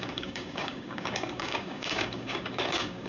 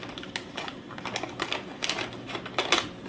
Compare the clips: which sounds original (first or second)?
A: second